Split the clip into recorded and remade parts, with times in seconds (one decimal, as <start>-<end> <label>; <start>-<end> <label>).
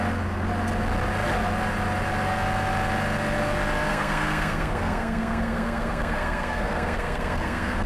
0.0-3.9 recorded; 3.9-7.9 remade